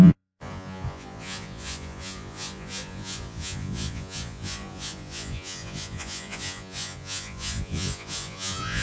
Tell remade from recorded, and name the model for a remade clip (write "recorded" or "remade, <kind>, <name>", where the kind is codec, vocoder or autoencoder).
remade, vocoder, Vocos